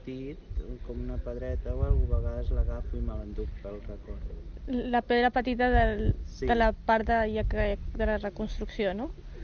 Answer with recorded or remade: recorded